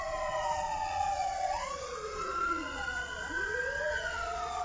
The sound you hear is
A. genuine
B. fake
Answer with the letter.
B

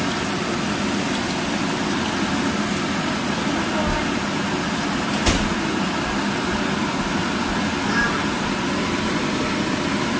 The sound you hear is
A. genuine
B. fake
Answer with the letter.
A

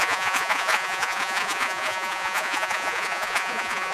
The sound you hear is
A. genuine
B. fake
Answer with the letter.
B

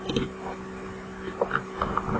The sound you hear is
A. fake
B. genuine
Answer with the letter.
B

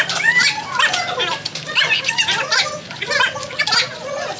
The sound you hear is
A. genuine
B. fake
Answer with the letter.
A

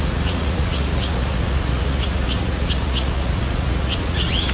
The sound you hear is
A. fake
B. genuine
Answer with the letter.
A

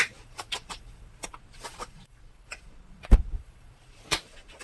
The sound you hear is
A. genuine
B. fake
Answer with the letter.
B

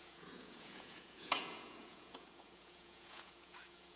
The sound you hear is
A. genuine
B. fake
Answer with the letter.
B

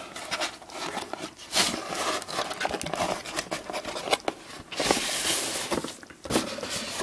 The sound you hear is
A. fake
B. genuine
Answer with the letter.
B